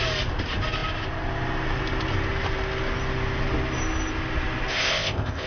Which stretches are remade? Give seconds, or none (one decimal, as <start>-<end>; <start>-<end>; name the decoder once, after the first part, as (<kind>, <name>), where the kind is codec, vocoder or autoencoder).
4.7-5.5 (codec, ZipCodec)